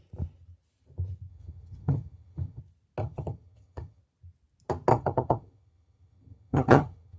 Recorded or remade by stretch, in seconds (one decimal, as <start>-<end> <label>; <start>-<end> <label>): 0.0-1.3 recorded; 1.3-2.6 remade; 2.6-3.0 recorded; 3.0-4.0 remade; 4.0-4.9 recorded; 4.9-7.2 remade